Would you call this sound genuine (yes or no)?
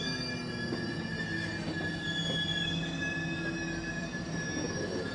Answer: yes